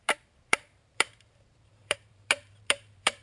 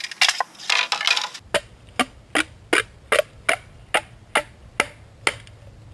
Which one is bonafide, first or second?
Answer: second